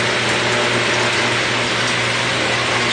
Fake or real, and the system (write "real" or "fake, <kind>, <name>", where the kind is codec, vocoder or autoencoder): real